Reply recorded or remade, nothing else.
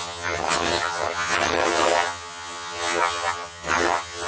remade